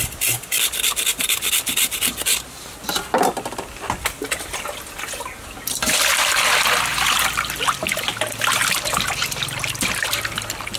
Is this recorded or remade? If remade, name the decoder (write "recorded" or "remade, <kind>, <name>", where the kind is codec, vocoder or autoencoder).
recorded